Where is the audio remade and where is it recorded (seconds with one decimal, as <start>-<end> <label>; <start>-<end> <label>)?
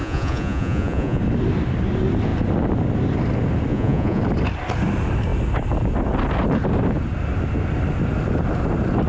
0.0-1.2 remade; 1.2-3.7 recorded; 3.7-4.2 remade; 4.2-9.1 recorded